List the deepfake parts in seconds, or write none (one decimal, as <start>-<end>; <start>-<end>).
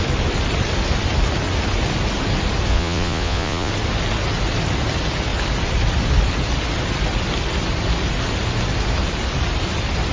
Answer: 2.7-3.7